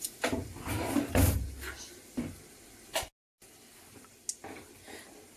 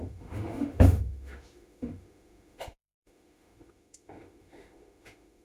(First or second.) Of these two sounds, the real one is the first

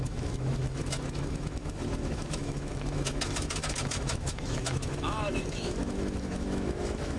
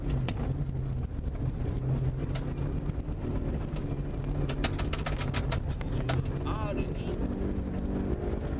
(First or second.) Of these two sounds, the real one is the second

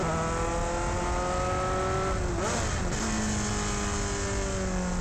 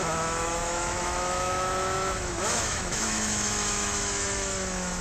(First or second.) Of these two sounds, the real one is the first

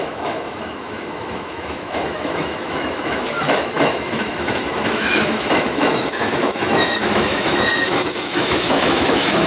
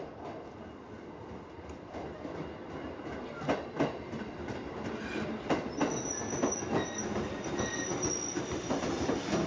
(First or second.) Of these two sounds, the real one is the second